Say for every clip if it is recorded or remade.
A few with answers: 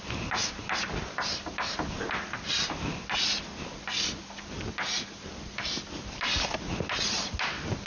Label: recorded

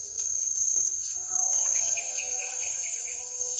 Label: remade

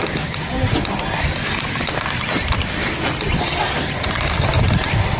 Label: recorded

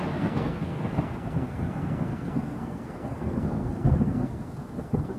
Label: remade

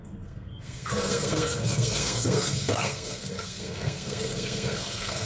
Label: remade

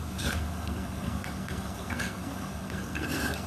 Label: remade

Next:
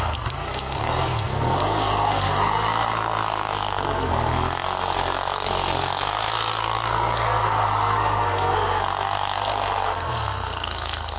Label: remade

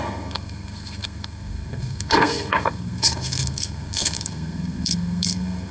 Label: remade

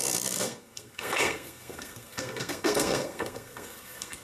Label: remade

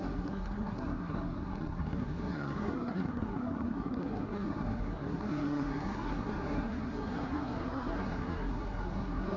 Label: remade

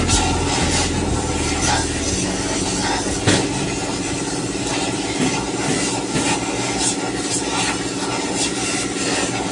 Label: recorded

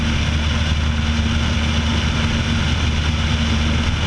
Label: recorded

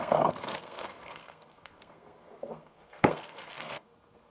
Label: remade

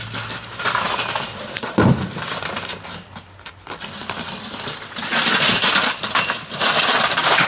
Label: recorded